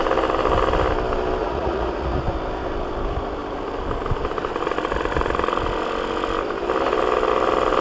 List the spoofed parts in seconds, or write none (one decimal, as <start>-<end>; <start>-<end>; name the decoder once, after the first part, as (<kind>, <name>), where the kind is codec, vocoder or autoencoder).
1.4-2.2 (vocoder, Vocos)